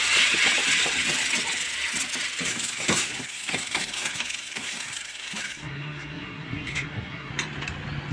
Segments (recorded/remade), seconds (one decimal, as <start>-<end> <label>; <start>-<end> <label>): 0.0-2.5 recorded; 2.5-7.3 remade; 7.3-8.1 recorded